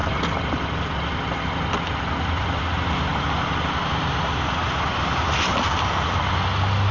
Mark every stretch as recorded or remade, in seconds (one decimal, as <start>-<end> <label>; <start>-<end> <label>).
0.0-6.9 recorded